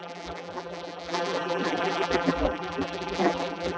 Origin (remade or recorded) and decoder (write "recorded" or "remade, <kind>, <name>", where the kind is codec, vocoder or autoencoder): remade, vocoder, BigVGAN v2